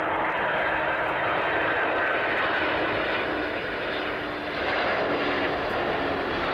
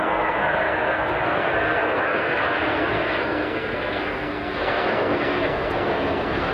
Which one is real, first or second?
first